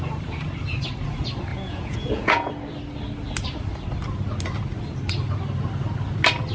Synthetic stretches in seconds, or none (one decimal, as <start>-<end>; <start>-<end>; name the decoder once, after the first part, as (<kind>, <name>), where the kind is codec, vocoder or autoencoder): 1.5-2.5 (vocoder, Vocos)